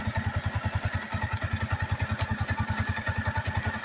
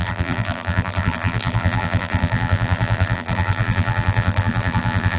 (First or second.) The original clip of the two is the first